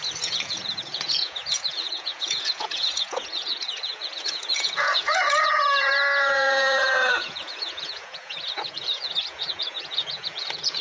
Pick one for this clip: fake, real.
fake